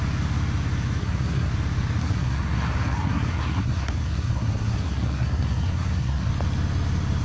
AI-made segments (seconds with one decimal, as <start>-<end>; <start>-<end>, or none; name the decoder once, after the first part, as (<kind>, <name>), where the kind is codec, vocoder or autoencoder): 1.0-1.5 (codec, SNAC); 2.0-6.3